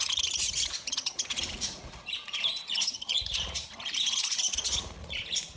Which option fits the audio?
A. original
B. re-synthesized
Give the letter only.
B